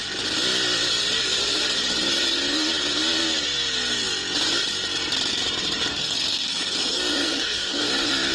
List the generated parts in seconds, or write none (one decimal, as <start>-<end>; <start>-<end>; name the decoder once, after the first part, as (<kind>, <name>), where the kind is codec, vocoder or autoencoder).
5.9-7.9 (codec, SNAC)